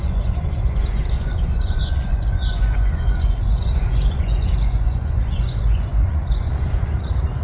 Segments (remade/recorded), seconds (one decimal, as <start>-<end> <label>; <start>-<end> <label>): 0.0-7.4 remade